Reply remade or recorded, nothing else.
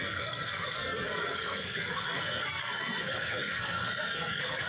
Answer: remade